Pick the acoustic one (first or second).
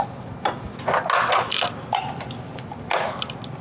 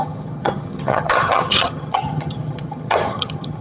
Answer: first